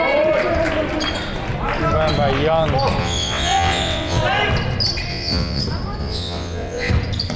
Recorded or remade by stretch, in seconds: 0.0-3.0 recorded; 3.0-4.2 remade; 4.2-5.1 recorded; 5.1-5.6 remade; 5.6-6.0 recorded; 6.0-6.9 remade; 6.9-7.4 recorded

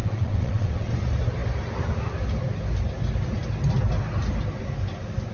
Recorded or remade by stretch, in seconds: 0.0-0.9 remade; 0.9-5.3 recorded